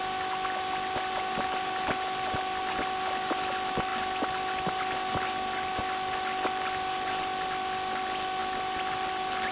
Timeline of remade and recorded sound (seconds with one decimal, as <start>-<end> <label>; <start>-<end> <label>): 0.0-9.5 recorded